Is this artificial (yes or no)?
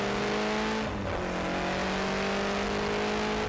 no